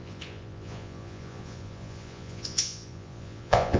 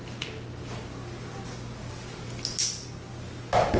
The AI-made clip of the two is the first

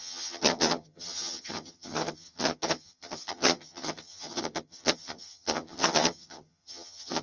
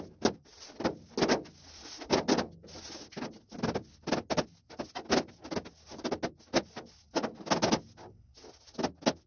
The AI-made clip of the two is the first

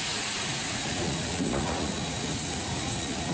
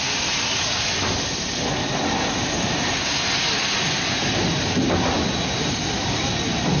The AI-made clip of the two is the first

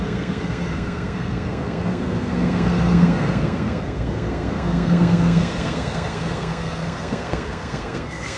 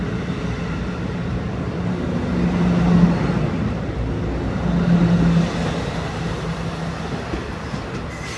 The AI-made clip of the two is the first